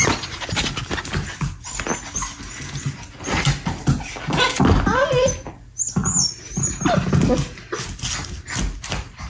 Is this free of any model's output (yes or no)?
yes